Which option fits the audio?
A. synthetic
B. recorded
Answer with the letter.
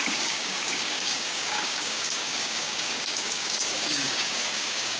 A